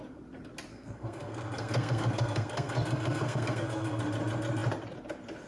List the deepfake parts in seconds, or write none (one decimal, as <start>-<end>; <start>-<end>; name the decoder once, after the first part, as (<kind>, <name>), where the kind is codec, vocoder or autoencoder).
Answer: 0.7-4.0 (codec, SNAC)

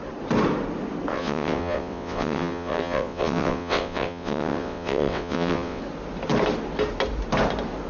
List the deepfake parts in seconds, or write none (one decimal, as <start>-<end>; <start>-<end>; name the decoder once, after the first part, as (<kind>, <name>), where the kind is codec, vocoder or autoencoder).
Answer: 1.1-5.8 (vocoder, WaveNeXt)